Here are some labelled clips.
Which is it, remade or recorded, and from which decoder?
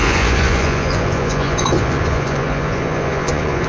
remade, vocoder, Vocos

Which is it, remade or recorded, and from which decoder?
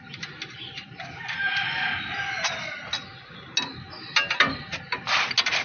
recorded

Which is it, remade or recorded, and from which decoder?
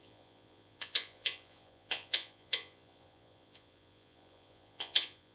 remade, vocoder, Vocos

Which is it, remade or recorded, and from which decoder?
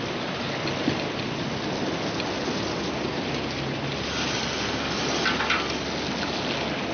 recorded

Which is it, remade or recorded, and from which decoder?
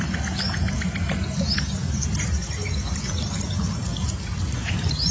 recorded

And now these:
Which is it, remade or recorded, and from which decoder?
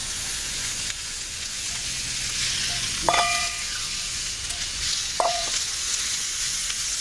remade, vocoder, Vocos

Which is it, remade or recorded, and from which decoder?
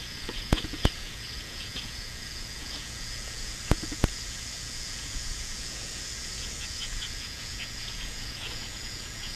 remade, vocoder, Vocos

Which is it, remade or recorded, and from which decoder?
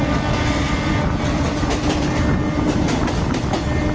recorded